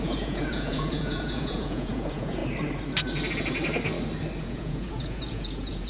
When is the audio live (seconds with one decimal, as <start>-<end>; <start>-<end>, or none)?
2.4-4.4

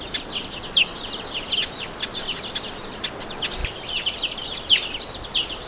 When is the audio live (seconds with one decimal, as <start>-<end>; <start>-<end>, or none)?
0.0-5.7

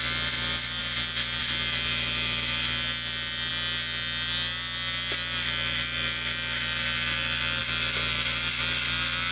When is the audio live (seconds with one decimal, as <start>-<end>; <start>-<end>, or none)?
0.0-9.3

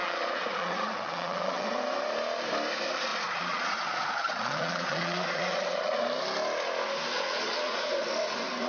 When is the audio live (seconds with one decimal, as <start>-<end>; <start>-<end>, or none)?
1.8-3.1; 6.0-7.1; 7.9-8.7

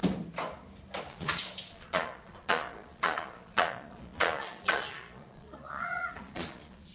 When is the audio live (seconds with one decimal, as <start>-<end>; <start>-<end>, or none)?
0.0-1.1

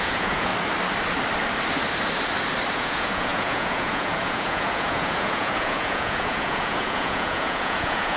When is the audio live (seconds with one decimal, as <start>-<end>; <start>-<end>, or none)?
0.5-2.7